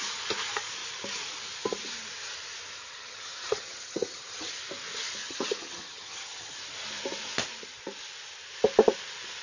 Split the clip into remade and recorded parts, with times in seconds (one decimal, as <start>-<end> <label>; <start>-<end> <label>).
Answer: 0.0-2.8 recorded; 2.8-4.6 remade; 4.6-5.2 recorded; 5.2-6.5 remade; 6.5-9.4 recorded